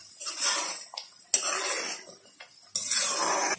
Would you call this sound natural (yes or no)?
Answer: yes